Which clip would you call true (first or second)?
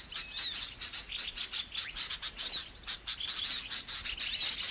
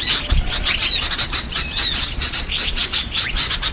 first